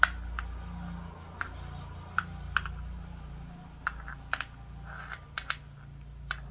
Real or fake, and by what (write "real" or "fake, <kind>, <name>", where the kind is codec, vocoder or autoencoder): real